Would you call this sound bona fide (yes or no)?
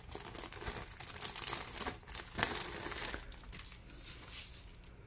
yes